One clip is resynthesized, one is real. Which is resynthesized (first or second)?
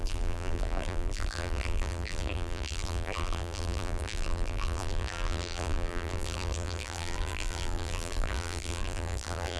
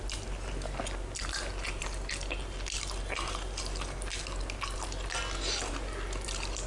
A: first